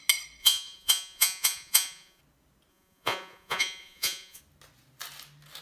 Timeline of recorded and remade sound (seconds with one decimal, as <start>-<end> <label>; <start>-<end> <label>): 0.0-0.4 recorded; 0.4-2.2 remade; 2.2-2.7 recorded; 2.7-4.4 remade; 4.4-5.6 recorded